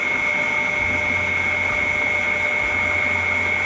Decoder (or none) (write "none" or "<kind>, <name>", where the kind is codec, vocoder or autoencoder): none